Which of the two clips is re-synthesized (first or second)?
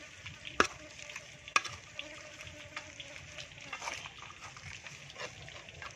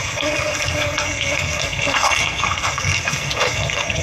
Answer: second